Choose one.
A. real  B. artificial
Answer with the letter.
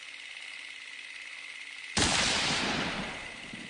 A